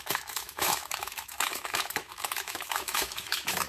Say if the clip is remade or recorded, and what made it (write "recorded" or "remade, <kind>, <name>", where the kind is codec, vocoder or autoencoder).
remade, autoencoder, DAC-VAE